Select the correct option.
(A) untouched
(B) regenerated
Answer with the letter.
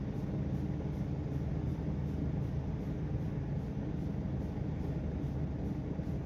A